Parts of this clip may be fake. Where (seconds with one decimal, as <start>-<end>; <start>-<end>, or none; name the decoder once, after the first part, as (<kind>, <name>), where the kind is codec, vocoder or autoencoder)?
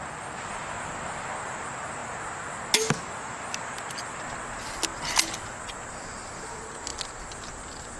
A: none